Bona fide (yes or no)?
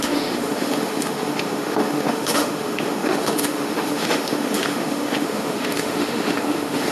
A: no